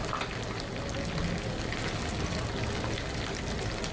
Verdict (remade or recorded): recorded